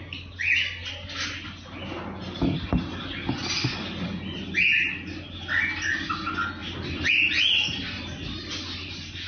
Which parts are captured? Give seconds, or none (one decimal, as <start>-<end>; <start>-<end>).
0.0-9.3